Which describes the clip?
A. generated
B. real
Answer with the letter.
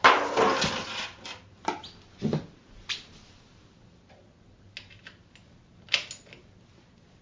B